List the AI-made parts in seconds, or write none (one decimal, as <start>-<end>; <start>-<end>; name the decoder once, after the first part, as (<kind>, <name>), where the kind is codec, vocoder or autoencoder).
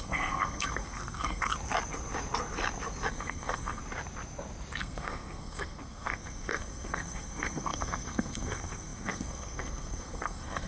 0.0-1.5 (codec, SNAC); 3.1-3.8; 4.8-10.7